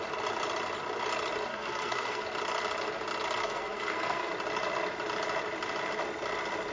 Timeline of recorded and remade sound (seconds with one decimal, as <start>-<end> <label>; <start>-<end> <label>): 0.0-1.5 recorded; 1.5-2.2 remade; 2.2-3.4 recorded; 3.4-4.3 remade; 4.3-6.7 recorded